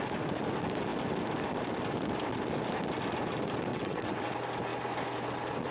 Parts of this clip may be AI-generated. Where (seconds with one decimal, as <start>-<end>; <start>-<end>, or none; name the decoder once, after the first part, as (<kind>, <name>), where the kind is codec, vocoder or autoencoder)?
3.7-4.3 (vocoder, WaveNeXt)